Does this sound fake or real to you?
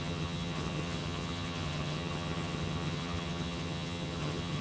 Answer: fake